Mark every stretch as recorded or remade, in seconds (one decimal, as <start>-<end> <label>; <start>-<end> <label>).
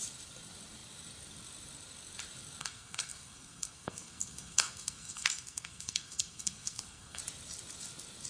0.0-2.6 recorded; 2.6-7.2 remade; 7.2-8.3 recorded